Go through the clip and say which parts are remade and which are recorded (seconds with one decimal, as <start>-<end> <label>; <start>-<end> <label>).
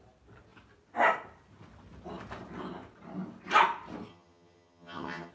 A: 0.0-4.1 recorded; 4.1-5.3 remade